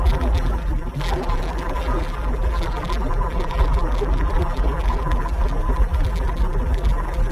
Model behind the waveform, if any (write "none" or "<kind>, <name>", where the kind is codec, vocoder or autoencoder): vocoder, BigVGAN v2